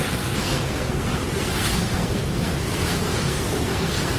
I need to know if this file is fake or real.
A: fake